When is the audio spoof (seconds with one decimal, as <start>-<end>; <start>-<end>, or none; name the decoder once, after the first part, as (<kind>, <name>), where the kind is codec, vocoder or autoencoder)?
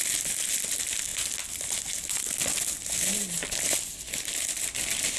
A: none